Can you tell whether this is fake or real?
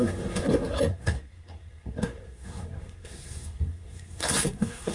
fake